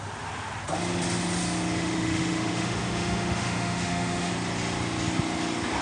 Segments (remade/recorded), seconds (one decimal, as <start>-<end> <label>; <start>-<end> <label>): 0.0-1.8 recorded; 1.8-4.3 remade; 4.3-5.8 recorded